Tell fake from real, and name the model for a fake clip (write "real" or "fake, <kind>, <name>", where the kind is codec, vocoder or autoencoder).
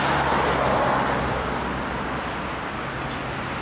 real